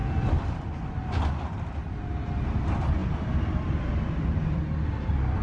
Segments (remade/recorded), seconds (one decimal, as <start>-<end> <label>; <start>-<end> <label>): 0.0-1.9 remade; 1.9-3.0 recorded; 3.0-4.6 remade; 4.6-5.4 recorded